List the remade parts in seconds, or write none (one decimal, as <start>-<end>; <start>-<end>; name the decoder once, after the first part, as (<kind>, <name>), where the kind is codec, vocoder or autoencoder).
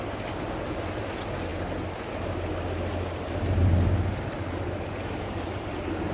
1.5-4.9 (vocoder, BigVGAN v2)